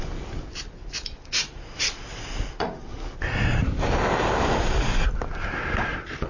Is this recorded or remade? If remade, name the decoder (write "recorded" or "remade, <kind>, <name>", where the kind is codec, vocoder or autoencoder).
recorded